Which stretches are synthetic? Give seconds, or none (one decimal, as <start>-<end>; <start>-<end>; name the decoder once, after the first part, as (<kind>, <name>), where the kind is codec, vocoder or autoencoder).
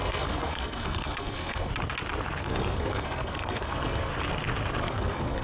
0.0-1.7 (codec, SNAC); 2.4-4.1; 4.8-5.4